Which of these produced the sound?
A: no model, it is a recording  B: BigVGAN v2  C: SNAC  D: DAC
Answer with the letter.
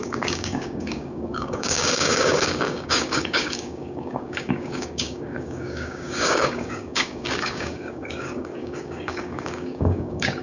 D